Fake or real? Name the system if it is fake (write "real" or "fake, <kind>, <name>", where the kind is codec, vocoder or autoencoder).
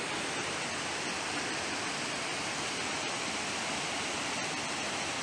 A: real